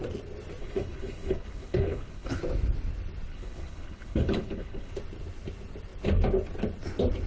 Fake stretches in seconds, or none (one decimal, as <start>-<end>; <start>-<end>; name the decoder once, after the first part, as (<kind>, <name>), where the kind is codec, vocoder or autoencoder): 0.6-2.4 (codec, HILCodec); 3.3-4.9